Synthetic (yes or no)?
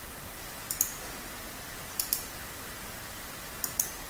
no